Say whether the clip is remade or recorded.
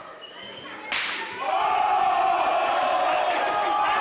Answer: recorded